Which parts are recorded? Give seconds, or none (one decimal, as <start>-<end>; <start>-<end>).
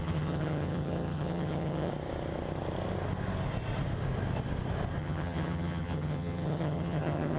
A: 1.9-5.0